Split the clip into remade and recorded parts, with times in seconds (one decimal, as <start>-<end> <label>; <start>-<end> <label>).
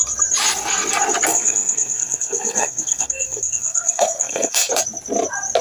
0.0-1.3 recorded; 1.3-4.7 remade; 4.7-5.6 recorded